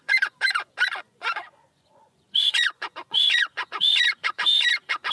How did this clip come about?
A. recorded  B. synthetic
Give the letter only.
B